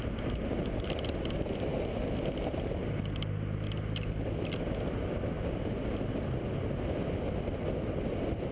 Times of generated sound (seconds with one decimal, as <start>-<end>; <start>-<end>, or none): none